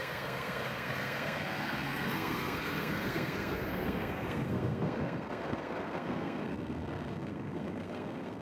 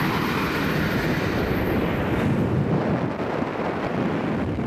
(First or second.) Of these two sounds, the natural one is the second